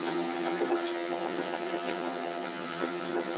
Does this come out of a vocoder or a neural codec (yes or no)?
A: yes